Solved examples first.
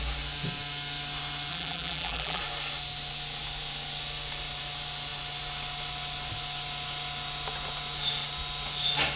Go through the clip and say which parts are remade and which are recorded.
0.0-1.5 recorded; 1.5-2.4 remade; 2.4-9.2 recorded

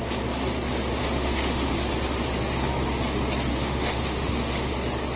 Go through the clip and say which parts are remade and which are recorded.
0.0-1.0 recorded; 1.0-1.7 remade; 1.7-3.5 recorded; 3.5-4.7 remade; 4.7-5.2 recorded

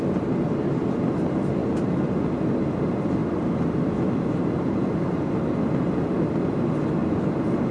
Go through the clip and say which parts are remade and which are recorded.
0.0-7.7 recorded

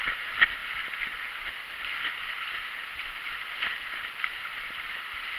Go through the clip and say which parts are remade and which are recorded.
0.0-5.4 recorded